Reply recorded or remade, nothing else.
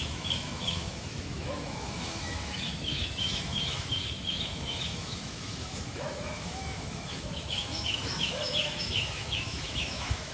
remade